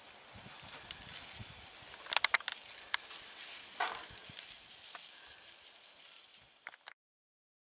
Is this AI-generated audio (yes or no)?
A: no